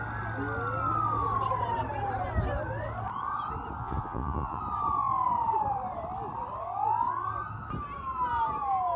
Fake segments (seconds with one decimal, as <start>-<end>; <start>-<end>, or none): 3.8-4.6